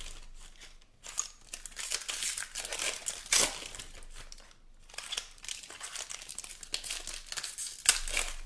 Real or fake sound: real